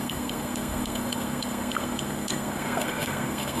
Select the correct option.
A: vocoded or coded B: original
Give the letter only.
A